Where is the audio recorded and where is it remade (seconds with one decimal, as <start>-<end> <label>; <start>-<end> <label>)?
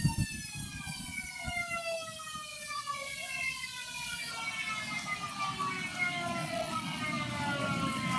0.0-0.7 recorded; 0.7-1.5 remade; 1.5-2.5 recorded; 2.5-4.3 remade; 4.3-6.4 recorded; 6.4-7.0 remade; 7.0-8.2 recorded